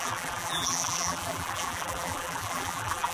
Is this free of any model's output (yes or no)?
no